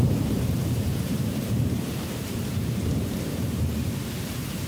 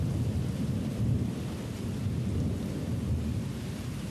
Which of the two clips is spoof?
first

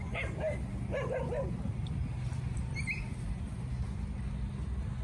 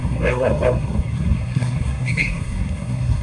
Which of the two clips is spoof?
second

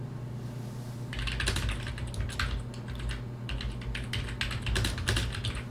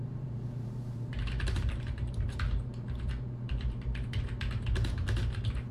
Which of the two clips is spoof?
second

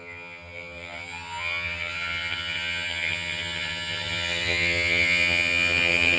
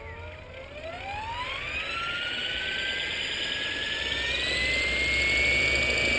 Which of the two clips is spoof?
first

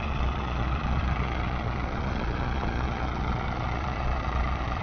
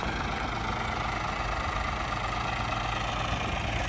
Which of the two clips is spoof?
first